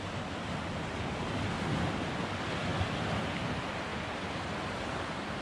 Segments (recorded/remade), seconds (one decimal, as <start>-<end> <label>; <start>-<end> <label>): 0.0-5.4 recorded